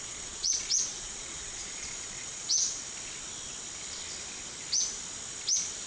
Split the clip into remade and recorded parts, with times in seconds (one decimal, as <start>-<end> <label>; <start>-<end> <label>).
0.0-2.8 remade; 2.8-5.9 recorded